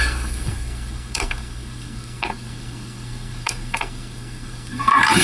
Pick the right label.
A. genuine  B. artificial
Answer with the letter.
B